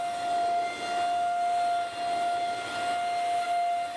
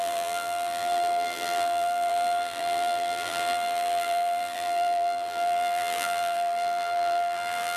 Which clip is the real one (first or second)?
first